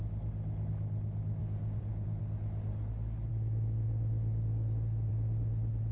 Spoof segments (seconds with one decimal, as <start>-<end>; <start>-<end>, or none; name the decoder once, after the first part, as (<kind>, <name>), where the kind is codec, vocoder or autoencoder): 1.4-2.2 (vocoder, Vocos)